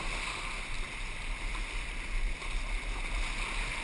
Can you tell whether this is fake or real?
real